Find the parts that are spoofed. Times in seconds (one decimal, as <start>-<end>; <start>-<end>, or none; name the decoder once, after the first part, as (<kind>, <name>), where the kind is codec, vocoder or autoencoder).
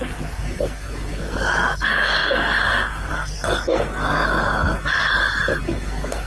0.0-5.1 (codec, SNAC); 5.6-6.3